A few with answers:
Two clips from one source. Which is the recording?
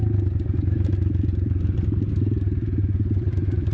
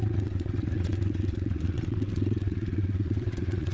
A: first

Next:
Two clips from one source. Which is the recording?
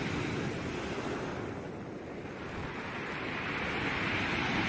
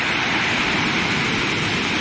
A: first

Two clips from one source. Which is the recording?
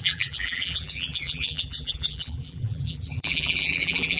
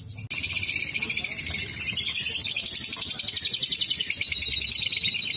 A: second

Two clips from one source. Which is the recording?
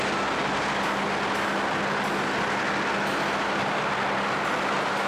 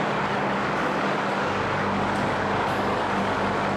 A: first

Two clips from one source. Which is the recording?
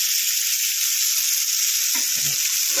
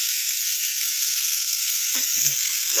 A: first